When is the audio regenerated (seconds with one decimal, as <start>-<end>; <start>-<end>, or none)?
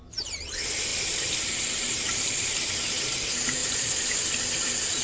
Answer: 0.9-2.7; 3.6-4.1